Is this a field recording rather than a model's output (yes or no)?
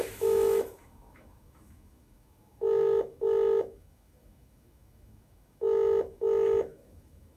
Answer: no